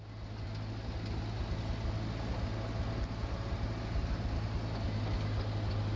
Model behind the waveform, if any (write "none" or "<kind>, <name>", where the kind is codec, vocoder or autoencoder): none